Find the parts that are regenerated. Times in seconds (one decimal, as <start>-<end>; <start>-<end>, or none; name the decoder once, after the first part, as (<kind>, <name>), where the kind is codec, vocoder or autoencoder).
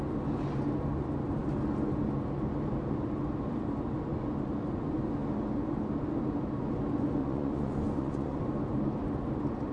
7.2-8.4 (vocoder, Vocos)